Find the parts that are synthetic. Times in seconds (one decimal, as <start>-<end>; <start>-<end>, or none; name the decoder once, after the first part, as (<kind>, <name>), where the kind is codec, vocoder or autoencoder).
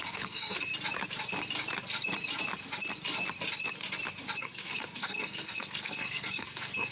0.0-0.7 (codec, SNAC); 4.4-6.9